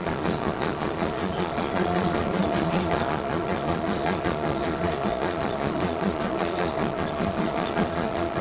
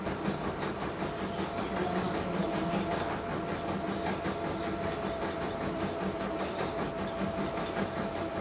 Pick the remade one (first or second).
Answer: first